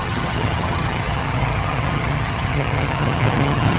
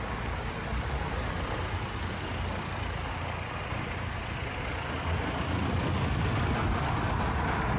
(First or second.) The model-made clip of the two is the first